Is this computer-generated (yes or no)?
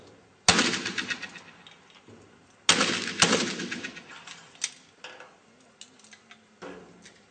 no